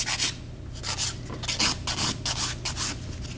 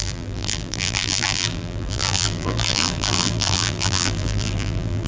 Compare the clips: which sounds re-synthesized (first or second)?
second